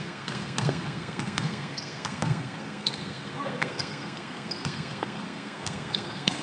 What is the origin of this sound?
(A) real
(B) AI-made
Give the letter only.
B